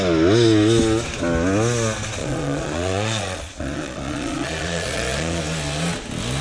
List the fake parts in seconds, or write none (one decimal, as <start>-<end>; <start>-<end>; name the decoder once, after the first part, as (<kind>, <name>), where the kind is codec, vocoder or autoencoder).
2.2-5.4 (vocoder, Vocos)